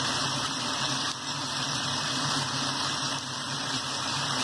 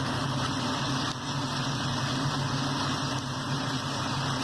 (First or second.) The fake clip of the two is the first